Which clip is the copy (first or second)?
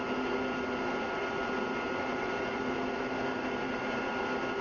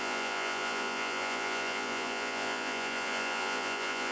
second